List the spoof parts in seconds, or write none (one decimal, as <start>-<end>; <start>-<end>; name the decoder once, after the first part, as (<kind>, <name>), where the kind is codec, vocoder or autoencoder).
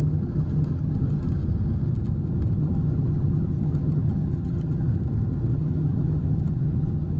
0.0-1.4 (vocoder, HiFi-GAN); 2.6-4.9; 5.5-7.2